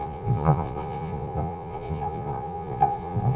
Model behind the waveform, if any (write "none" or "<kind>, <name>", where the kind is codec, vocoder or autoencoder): vocoder, Vocos